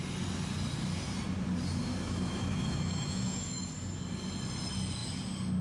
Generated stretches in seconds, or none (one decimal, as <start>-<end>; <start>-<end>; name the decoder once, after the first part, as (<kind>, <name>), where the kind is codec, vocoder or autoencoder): 1.8-3.7 (autoencoder, DAC-VAE)